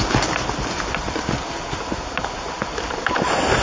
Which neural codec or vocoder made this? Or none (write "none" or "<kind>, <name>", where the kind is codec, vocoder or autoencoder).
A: none